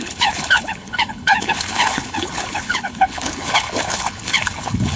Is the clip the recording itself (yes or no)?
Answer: no